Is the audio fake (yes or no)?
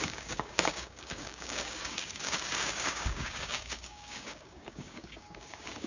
yes